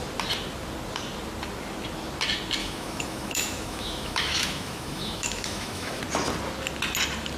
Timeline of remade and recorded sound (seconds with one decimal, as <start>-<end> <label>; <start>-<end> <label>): 0.0-2.6 recorded; 2.6-6.0 remade; 6.0-7.4 recorded